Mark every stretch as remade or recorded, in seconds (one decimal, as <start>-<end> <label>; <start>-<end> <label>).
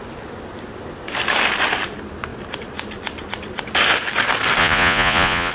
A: 0.0-4.6 recorded; 4.6-5.5 remade